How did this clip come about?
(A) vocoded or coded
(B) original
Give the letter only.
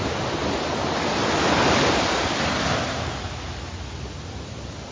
B